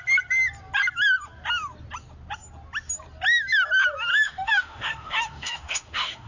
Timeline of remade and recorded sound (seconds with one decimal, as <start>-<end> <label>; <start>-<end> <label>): 0.0-4.1 recorded; 4.1-6.3 remade